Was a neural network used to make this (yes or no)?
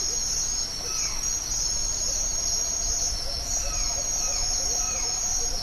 no